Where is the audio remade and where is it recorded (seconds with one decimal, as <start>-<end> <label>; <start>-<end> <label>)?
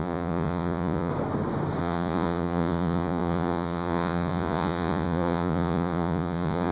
0.0-1.1 remade; 1.1-1.8 recorded; 1.8-6.7 remade